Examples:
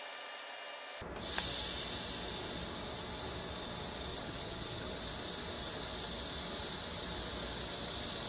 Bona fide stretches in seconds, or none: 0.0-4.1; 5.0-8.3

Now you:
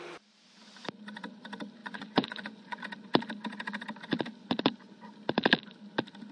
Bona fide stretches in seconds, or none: 0.0-1.8; 2.8-6.3

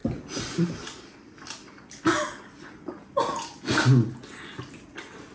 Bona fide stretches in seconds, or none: 0.0-5.3

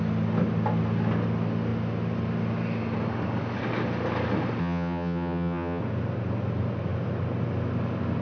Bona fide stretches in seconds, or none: 0.0-4.6; 5.8-8.2